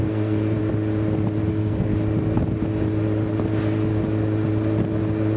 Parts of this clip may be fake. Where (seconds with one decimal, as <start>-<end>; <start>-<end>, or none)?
0.0-0.6; 1.5-1.9

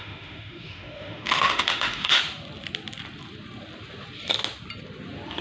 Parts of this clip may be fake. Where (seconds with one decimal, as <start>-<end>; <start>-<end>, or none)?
0.0-2.2

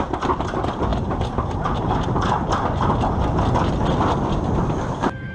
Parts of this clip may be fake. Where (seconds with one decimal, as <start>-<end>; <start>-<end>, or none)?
none

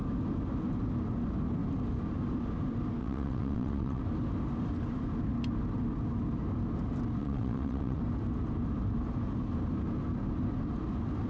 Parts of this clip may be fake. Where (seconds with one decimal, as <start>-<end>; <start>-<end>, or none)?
3.0-4.0; 7.2-8.0

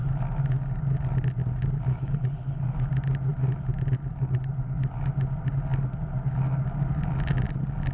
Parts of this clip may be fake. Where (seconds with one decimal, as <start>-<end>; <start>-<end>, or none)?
1.9-2.6